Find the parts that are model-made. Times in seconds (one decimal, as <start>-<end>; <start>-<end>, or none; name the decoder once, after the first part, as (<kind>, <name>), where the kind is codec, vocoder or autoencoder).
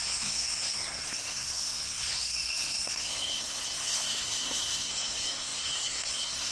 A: 0.0-6.5 (codec, SNAC)